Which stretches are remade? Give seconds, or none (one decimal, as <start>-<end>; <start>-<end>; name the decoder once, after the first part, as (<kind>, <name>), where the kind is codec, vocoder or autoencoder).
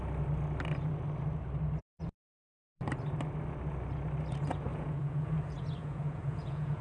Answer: 4.7-6.8 (vocoder, Vocos)